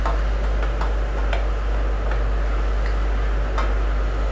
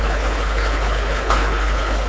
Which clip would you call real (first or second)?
first